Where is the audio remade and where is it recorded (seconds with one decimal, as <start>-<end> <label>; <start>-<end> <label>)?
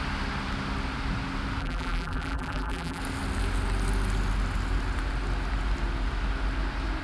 0.0-1.6 recorded; 1.6-3.0 remade; 3.0-7.0 recorded